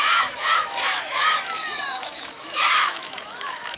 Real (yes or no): no